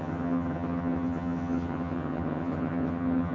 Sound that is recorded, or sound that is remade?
remade